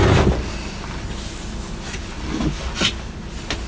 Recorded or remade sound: recorded